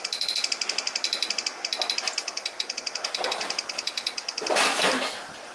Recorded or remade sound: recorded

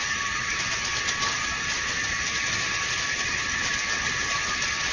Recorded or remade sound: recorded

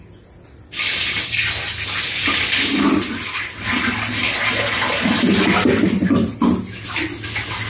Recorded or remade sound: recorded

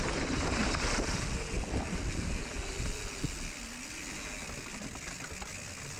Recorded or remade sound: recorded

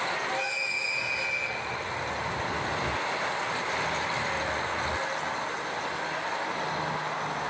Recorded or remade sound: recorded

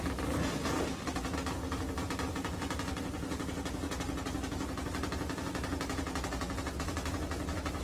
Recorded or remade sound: recorded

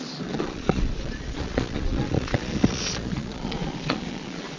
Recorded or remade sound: remade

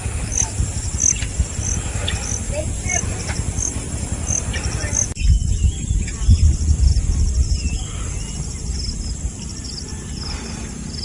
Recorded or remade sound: recorded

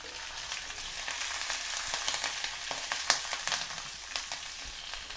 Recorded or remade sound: recorded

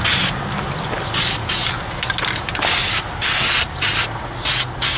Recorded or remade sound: recorded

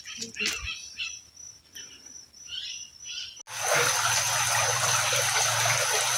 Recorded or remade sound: recorded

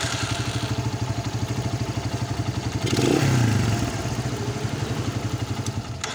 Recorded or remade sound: recorded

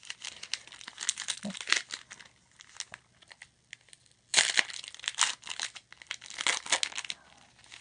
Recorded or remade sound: recorded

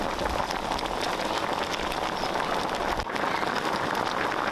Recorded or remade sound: recorded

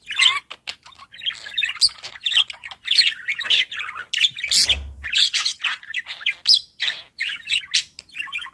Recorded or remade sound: recorded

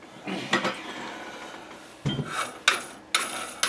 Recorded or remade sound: recorded